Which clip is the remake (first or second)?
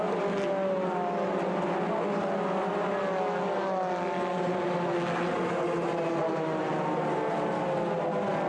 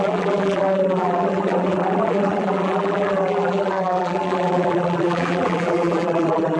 second